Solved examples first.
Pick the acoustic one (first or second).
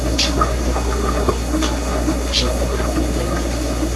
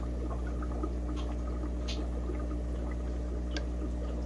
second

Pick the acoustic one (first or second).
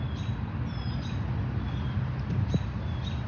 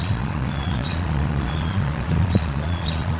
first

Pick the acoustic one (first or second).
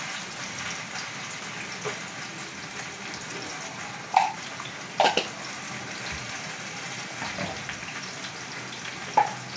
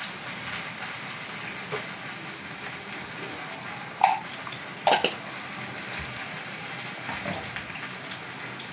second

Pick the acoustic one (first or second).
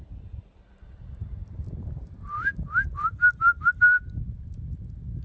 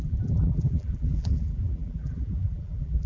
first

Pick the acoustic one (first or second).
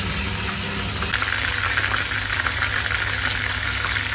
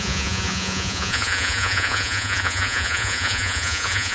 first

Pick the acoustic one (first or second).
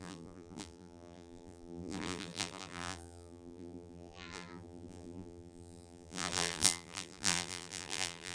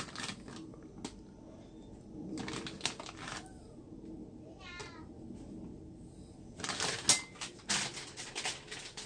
second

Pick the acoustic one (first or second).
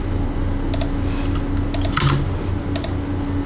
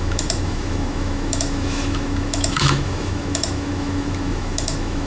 first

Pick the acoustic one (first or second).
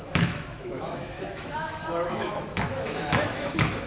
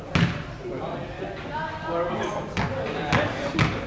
second